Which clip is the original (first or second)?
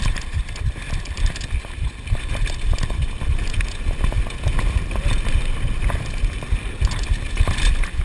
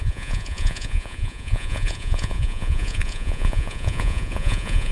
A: first